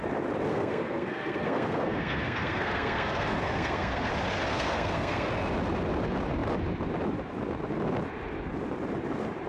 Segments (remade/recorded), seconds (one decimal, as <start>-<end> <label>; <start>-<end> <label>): 0.0-0.5 recorded; 0.5-4.1 remade; 4.1-4.5 recorded; 4.5-5.3 remade; 5.3-9.5 recorded